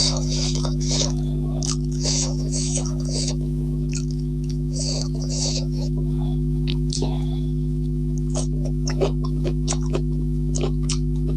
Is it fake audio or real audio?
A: fake